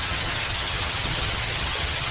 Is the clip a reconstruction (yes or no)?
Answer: yes